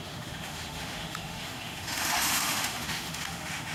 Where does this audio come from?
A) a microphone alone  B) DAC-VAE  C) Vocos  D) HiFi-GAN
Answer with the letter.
B